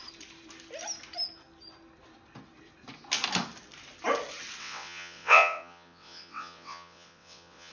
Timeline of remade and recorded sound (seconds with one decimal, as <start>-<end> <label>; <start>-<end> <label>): 0.0-4.6 recorded; 4.6-7.7 remade